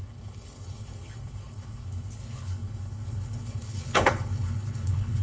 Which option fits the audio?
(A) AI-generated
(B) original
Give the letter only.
A